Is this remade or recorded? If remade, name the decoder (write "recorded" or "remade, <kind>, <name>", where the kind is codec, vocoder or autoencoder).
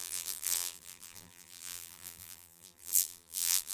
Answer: remade, vocoder, BigVGAN v2